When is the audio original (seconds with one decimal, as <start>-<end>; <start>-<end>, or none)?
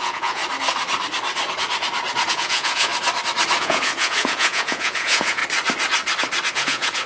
0.4-2.3; 2.9-3.6; 5.4-6.5